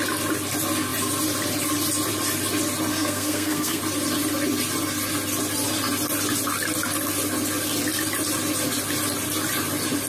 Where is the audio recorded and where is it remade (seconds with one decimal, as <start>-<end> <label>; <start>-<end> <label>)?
0.0-2.9 recorded; 2.9-3.8 remade; 3.8-10.1 recorded